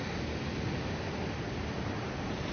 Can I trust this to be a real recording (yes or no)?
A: yes